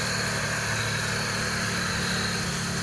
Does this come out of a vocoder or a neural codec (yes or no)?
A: no